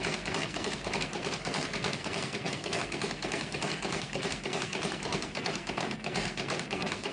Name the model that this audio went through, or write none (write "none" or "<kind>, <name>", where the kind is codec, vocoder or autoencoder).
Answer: codec, SNAC